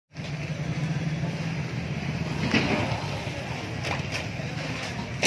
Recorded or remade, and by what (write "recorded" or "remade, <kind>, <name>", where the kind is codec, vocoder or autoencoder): recorded